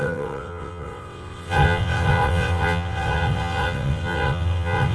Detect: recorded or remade remade